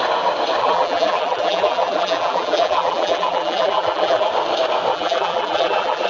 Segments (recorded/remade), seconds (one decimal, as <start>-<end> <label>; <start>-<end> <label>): 0.0-0.6 recorded; 0.6-4.3 remade; 4.3-4.9 recorded; 4.9-6.1 remade